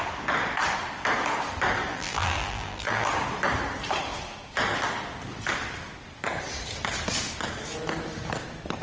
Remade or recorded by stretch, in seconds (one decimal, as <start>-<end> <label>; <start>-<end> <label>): 0.0-1.9 recorded; 1.9-3.1 remade; 3.1-8.8 recorded